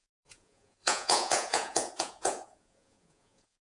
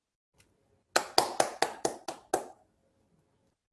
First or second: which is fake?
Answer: first